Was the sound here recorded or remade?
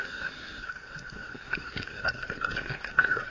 remade